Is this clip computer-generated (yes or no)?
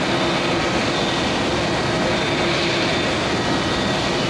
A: no